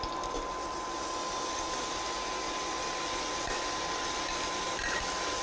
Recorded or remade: recorded